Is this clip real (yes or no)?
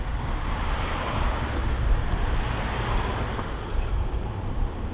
yes